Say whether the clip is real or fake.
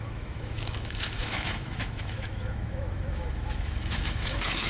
fake